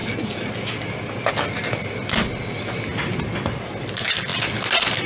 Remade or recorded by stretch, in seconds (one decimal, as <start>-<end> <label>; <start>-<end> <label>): 0.0-5.1 recorded